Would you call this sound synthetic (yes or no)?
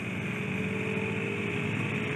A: no